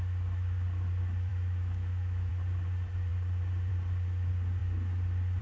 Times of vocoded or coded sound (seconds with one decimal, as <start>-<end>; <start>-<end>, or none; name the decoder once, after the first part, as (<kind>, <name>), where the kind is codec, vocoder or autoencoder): 1.3-2.3 (autoencoder, DAC-VAE)